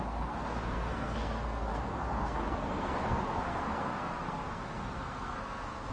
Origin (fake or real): fake